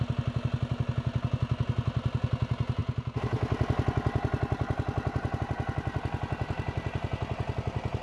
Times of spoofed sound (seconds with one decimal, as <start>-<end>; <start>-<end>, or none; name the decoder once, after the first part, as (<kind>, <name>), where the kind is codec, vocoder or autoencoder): none

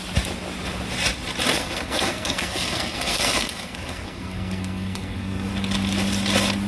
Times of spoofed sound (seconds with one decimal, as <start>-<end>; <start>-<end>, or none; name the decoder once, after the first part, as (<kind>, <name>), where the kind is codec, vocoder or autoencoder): 1.5-5.5 (codec, SNAC)

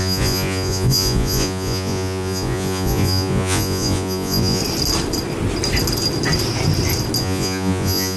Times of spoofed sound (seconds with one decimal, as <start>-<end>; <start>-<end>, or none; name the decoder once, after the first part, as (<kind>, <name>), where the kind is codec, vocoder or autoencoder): 0.0-4.6 (vocoder, Vocos); 7.2-8.2